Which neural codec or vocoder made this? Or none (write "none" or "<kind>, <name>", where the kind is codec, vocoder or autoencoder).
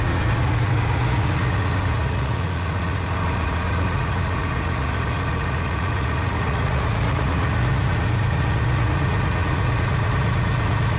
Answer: vocoder, Vocos